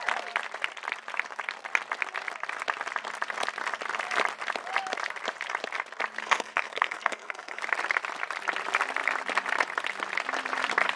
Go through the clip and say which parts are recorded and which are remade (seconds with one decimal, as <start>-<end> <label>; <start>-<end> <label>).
0.0-6.2 recorded; 6.2-7.6 remade; 7.6-11.0 recorded

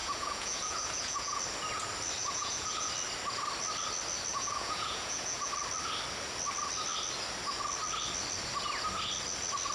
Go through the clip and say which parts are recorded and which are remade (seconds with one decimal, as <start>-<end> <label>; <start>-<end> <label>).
0.0-1.4 remade; 1.4-2.2 recorded; 2.2-2.9 remade; 2.9-4.3 recorded; 4.3-5.5 remade; 5.5-9.7 recorded

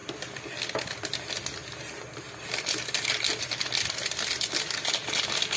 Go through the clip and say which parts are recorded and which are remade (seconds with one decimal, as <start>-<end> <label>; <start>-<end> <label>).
0.0-5.6 recorded

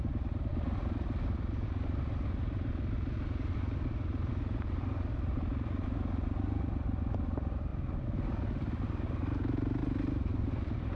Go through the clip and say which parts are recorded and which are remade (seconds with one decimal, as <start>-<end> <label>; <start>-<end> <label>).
0.0-11.0 recorded

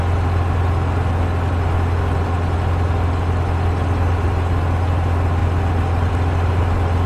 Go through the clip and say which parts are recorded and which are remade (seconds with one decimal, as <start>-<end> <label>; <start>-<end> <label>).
0.0-7.1 recorded

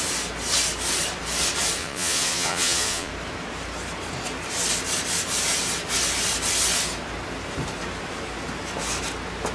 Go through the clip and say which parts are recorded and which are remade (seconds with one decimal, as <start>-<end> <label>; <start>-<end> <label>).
0.0-1.8 recorded; 1.8-3.1 remade; 3.1-9.5 recorded